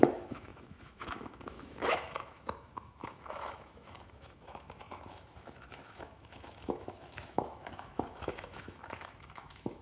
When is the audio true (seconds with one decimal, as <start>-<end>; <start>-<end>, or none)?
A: none